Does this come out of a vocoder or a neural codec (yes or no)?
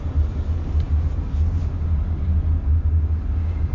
no